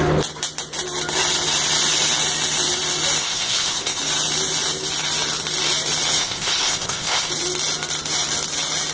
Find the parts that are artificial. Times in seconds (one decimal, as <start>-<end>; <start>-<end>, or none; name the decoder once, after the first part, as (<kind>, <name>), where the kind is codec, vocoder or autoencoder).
3.2-4.0 (codec, ZipCodec); 6.2-7.3